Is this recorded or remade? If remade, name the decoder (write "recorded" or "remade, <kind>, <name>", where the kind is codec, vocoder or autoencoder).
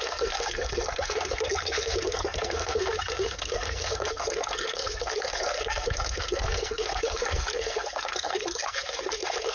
remade, codec, SNAC